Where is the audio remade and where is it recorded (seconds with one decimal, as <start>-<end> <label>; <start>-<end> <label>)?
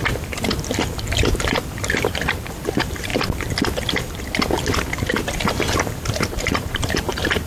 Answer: 0.0-1.5 recorded; 1.5-3.1 remade; 3.1-5.8 recorded; 5.8-7.5 remade